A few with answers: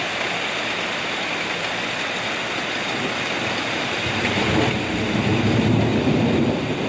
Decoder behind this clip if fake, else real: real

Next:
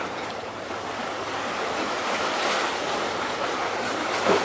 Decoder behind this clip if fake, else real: real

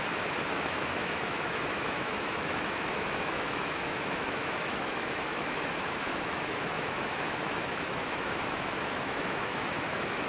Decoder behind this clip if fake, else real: fake, autoencoder, DAC-VAE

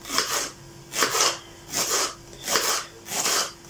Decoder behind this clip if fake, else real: real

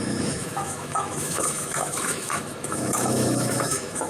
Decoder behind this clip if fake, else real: fake, autoencoder, DAC-VAE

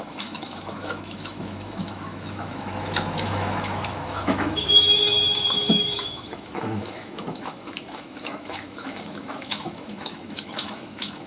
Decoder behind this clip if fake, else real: fake, autoencoder, DAC-VAE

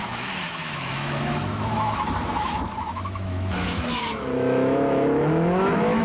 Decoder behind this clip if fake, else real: fake, autoencoder, DAC-VAE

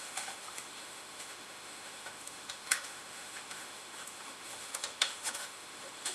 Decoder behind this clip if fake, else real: fake, autoencoder, DAC-VAE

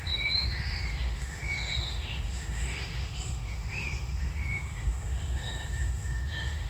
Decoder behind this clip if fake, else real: fake, autoencoder, DAC-VAE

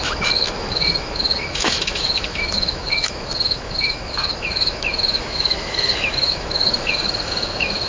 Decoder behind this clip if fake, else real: fake, autoencoder, DAC-VAE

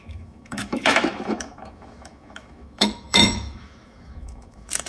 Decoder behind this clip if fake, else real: fake, autoencoder, DAC-VAE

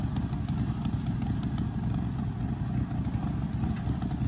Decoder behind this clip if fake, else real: real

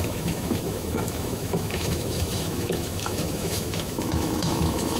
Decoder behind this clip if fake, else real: fake, autoencoder, DAC-VAE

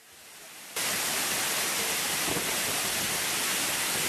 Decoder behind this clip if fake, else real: real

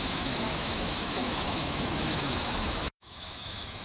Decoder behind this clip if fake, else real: fake, autoencoder, DAC-VAE